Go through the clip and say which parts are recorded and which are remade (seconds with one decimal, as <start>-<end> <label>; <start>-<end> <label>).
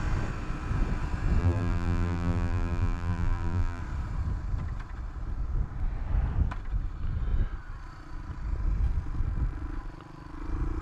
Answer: 0.0-1.4 recorded; 1.4-3.8 remade; 3.8-10.8 recorded